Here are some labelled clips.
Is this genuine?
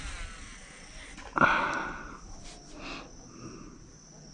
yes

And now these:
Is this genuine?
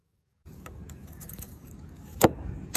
no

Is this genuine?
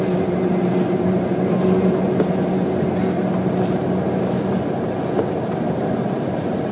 yes